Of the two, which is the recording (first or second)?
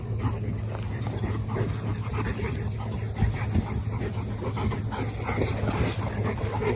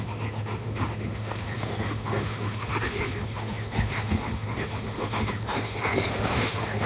first